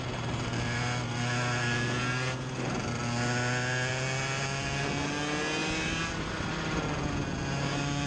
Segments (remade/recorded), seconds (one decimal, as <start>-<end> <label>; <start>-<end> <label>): 0.0-8.1 recorded